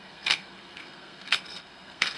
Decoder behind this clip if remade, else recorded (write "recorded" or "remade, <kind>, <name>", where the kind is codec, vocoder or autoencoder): remade, codec, SNAC